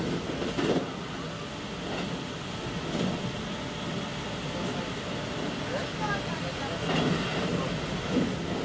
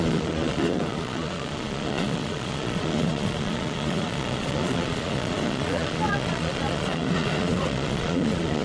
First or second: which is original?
first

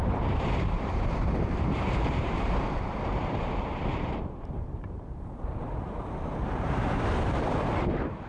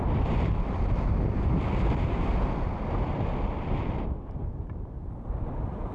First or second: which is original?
second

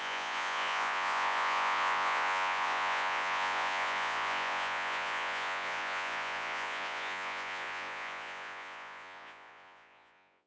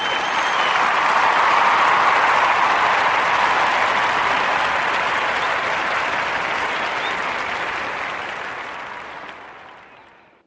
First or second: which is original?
second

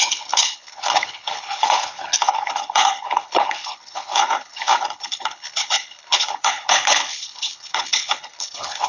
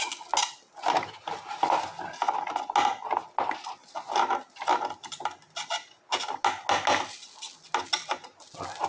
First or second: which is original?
second